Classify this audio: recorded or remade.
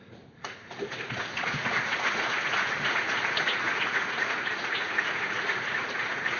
remade